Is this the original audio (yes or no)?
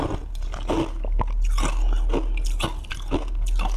yes